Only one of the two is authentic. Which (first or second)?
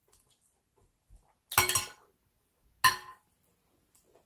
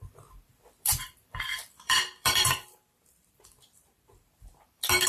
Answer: first